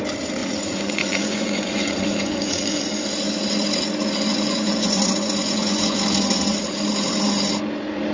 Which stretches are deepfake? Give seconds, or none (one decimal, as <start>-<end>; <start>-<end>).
0.4-2.9; 4.3-6.0